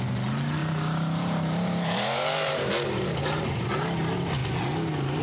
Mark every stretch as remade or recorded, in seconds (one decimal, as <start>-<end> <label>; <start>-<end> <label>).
0.0-0.6 recorded; 0.6-3.4 remade; 3.4-5.2 recorded